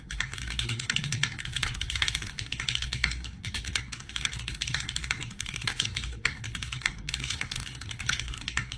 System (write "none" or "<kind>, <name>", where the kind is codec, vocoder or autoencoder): codec, SNAC